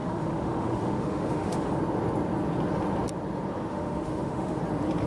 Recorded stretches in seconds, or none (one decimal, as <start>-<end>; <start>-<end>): 1.8-3.7; 4.6-5.1